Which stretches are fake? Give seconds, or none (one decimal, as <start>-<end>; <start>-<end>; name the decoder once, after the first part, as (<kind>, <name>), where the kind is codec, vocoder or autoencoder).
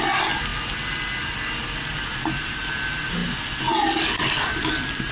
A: none